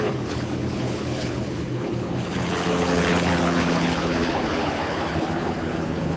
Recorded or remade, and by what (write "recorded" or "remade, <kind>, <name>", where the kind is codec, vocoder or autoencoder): remade, codec, HILCodec